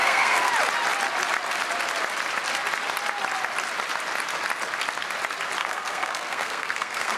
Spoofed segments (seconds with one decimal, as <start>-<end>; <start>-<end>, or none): 0.0-0.5; 5.6-7.2